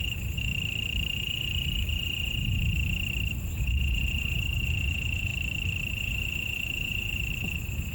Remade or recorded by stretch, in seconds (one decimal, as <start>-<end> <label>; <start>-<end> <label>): 0.0-0.5 remade; 0.5-1.1 recorded; 1.1-2.8 remade; 2.8-3.4 recorded; 3.4-5.3 remade; 5.3-5.9 recorded; 5.9-7.9 remade

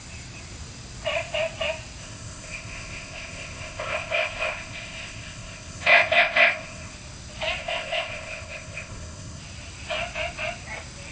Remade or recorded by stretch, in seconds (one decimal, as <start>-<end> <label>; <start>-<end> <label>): 0.0-2.0 recorded; 2.0-6.9 remade; 6.9-7.6 recorded; 7.6-9.4 remade; 9.4-11.1 recorded

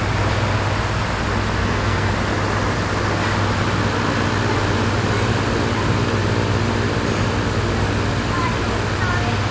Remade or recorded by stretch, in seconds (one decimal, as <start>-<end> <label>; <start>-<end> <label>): 0.0-1.6 recorded; 1.6-2.1 remade; 2.1-9.5 recorded